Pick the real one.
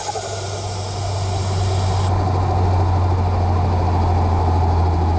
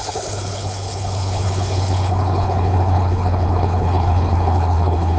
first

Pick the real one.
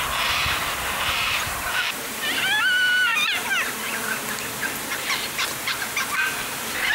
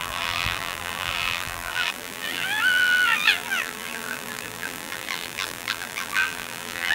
first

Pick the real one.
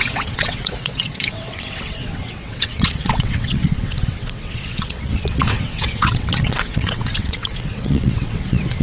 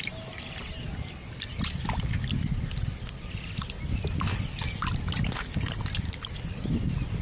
second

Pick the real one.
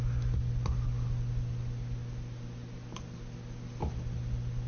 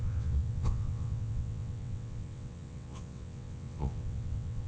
first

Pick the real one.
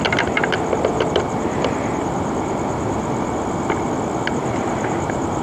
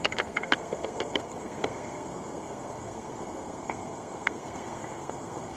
first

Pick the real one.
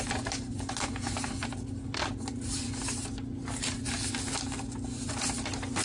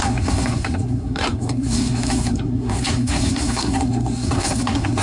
first